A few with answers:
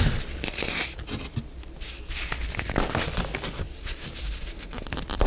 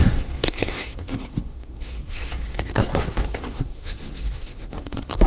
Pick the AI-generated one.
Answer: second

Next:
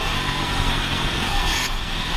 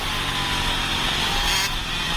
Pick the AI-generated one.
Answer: first